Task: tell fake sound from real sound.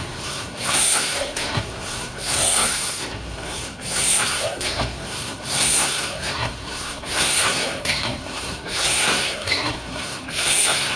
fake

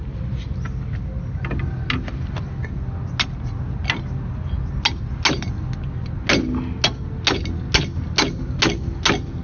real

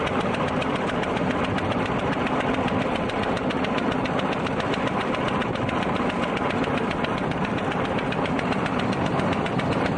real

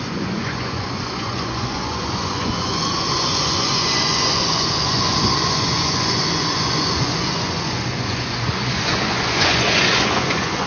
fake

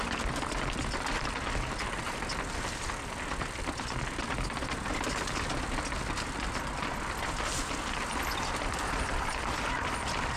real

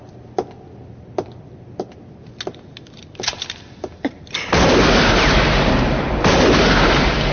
real